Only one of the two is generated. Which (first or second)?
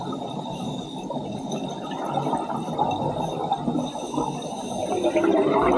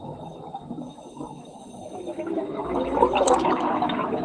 second